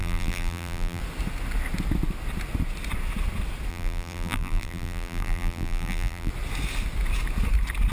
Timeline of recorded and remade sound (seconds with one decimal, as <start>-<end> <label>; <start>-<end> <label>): 0.0-1.0 remade; 1.0-3.7 recorded; 3.7-6.3 remade; 6.3-7.9 recorded